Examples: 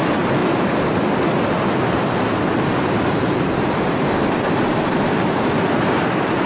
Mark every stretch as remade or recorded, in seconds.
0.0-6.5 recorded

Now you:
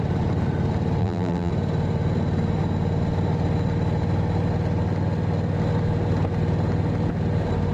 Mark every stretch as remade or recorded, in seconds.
0.0-1.0 recorded; 1.0-1.5 remade; 1.5-7.7 recorded

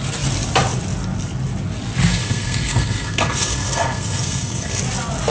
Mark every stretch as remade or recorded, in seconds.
0.0-2.1 recorded; 2.1-4.8 remade; 4.8-5.3 recorded

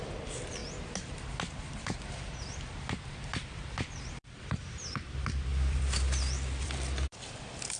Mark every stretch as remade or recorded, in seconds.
0.0-0.6 remade; 0.6-1.2 recorded; 1.2-7.8 remade

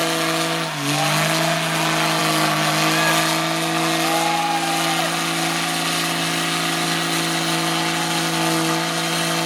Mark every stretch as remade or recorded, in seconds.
0.0-9.5 recorded